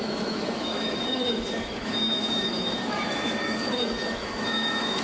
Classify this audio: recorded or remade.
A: remade